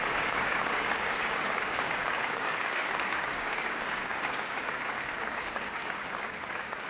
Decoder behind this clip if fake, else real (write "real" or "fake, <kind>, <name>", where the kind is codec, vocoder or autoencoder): fake, codec, DAC